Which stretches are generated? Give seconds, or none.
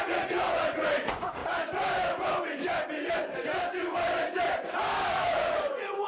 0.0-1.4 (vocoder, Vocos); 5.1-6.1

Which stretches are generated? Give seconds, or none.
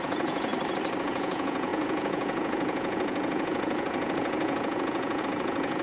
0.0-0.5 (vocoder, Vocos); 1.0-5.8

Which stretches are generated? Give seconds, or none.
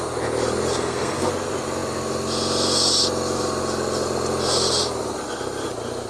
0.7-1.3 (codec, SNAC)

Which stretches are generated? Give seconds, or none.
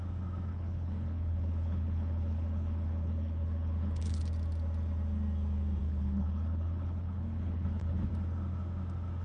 0.5-4.2 (codec, HILCodec); 5.8-8.1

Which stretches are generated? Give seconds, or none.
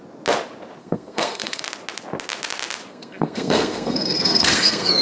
0.8-1.6 (codec, SNAC); 2.9-5.0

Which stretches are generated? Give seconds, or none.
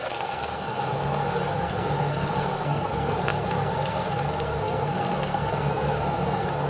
0.0-6.7 (codec, SNAC)